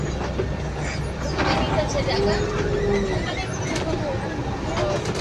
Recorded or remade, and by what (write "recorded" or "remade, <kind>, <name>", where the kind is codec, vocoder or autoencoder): recorded